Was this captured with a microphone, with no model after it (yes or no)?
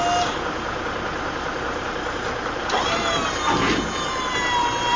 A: no